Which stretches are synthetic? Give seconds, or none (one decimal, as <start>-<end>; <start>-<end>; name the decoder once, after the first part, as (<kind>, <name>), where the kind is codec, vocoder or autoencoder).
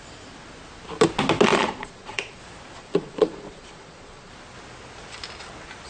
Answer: 1.5-2.4 (vocoder, Vocos); 2.8-4.3